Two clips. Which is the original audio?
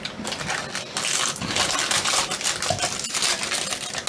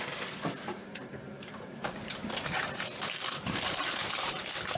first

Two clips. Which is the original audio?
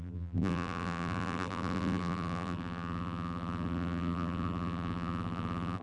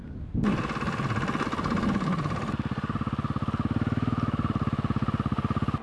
second